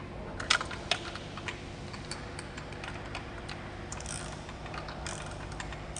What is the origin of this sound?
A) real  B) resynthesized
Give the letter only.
A